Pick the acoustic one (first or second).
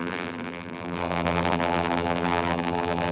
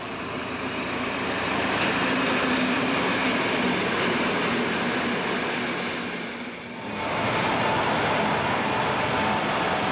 second